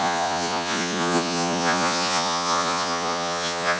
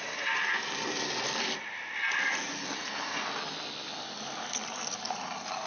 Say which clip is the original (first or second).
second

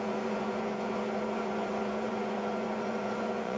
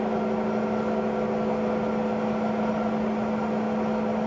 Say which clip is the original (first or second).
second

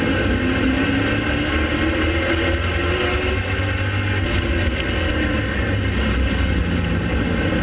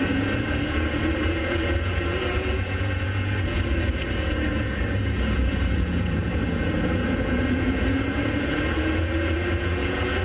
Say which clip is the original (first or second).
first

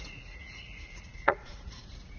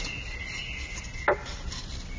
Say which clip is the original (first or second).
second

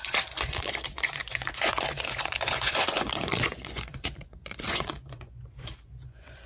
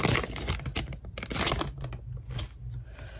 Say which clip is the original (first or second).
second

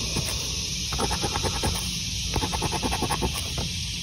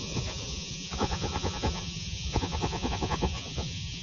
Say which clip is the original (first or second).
first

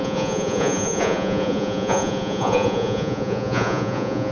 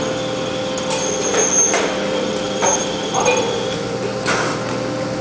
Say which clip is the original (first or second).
second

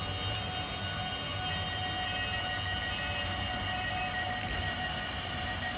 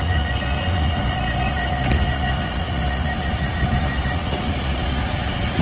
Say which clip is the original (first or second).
first